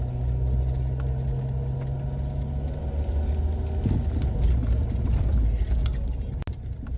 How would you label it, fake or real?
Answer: real